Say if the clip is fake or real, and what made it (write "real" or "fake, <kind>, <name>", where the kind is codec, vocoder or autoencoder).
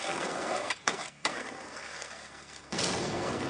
fake, codec, SNAC